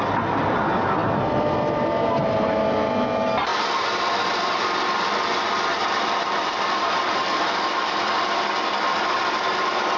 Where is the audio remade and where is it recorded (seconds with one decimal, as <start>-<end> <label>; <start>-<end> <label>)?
0.0-1.0 remade; 1.0-3.8 recorded; 3.8-10.0 remade